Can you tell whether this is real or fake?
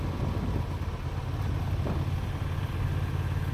real